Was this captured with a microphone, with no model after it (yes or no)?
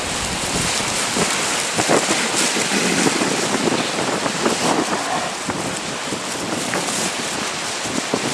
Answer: yes